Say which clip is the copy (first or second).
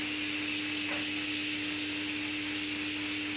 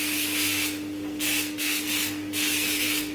second